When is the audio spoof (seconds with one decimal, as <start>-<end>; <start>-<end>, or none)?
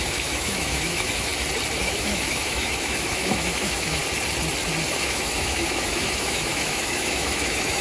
0.0-1.3; 1.8-4.0; 4.9-7.8